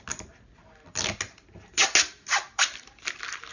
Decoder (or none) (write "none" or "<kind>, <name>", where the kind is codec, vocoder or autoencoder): none